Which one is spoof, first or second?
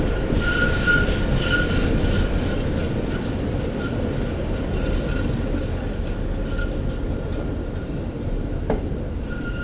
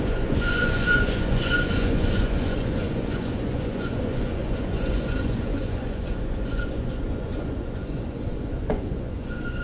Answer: second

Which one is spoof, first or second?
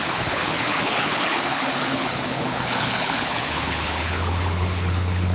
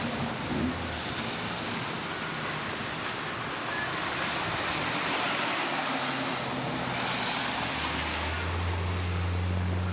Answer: first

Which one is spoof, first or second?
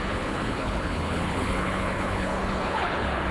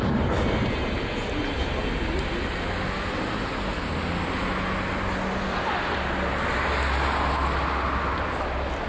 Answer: first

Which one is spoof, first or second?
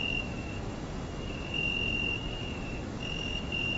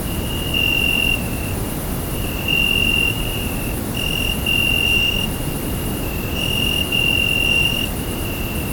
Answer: first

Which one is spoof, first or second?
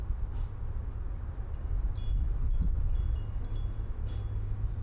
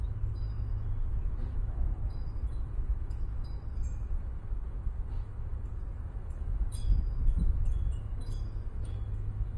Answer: second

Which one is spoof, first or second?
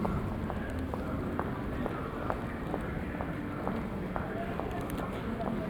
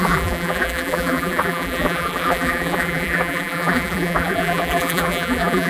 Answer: second